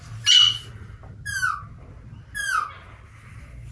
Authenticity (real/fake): real